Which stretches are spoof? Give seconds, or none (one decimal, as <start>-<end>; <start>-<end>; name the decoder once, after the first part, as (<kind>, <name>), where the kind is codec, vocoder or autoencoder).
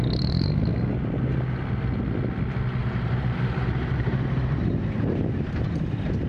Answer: 2.8-6.3 (vocoder, BigVGAN v2)